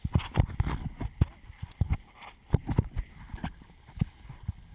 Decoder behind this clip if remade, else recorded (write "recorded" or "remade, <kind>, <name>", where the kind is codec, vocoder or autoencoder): recorded